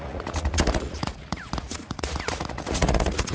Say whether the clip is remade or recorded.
remade